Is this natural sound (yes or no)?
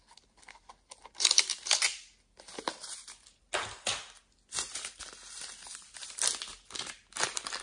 yes